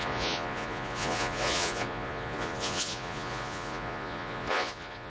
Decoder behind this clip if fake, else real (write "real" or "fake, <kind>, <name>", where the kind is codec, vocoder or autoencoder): fake, vocoder, Vocos